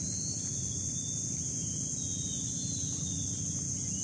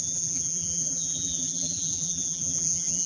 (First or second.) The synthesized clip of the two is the second